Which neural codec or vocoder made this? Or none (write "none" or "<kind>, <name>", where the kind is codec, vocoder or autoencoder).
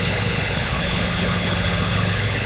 codec, HILCodec